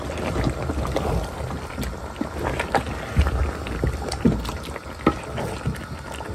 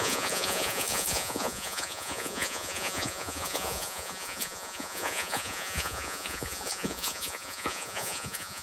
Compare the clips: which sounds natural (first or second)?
first